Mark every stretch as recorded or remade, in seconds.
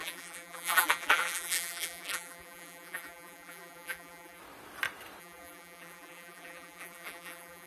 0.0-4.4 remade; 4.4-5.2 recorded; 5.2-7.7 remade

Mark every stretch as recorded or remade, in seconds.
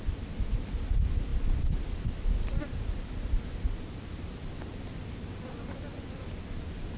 0.0-1.3 recorded; 1.3-5.1 remade; 5.1-7.0 recorded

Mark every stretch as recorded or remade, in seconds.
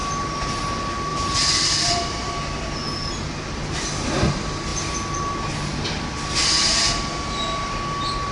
0.0-1.1 recorded; 1.1-2.3 remade; 2.3-8.3 recorded